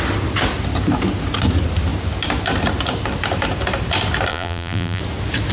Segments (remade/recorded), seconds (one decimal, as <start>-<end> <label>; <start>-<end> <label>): 0.0-4.3 recorded; 4.3-5.0 remade; 5.0-5.5 recorded